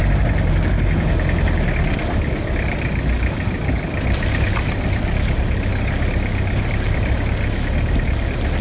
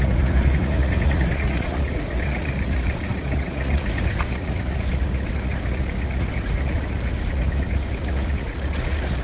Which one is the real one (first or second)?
first